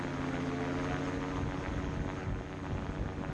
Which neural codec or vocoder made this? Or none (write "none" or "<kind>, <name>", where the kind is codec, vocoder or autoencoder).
none